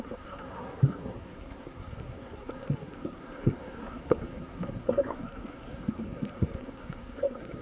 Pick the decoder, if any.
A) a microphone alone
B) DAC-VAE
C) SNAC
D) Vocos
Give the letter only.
C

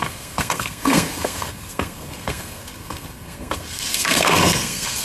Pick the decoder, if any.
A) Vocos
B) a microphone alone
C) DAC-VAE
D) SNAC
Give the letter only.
D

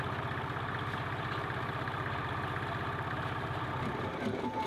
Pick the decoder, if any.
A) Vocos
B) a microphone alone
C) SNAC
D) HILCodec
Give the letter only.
B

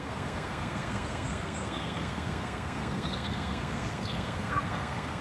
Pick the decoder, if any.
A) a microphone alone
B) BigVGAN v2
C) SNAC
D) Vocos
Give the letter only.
C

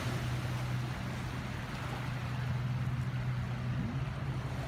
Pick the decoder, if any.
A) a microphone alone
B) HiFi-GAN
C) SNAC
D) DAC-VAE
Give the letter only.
A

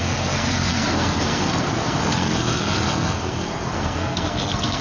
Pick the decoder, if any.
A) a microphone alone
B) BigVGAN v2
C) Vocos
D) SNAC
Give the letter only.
D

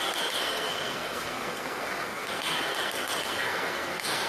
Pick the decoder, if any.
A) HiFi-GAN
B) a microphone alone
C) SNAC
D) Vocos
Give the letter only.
C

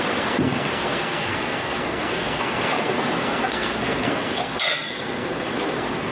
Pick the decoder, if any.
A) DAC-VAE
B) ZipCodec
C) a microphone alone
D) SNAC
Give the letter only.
D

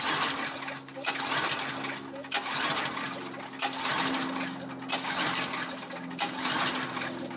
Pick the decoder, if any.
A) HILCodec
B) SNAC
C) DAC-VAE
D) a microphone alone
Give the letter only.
D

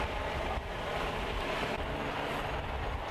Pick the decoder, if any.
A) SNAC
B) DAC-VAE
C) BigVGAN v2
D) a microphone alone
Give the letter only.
D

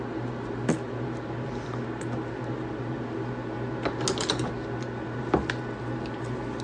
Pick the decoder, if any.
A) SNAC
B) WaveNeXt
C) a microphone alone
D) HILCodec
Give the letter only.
C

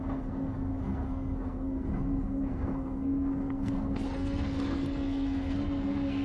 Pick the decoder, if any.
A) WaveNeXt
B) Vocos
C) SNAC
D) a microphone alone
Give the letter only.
C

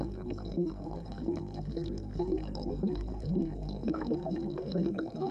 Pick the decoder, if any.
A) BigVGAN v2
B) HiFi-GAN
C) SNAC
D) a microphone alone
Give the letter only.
C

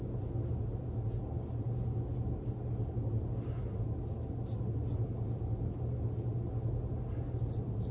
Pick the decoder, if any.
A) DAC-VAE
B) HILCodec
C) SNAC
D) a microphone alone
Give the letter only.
D